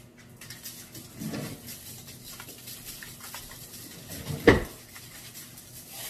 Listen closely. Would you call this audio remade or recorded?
recorded